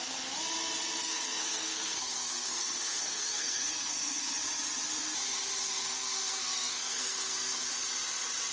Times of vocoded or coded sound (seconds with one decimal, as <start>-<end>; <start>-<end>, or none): 1.0-4.3; 5.6-7.7

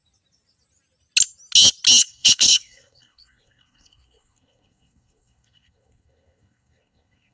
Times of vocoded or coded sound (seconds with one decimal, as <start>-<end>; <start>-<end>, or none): 2.0-7.3

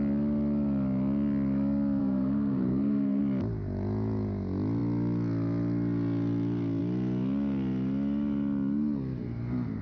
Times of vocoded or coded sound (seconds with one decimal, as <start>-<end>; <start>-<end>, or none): 2.0-3.2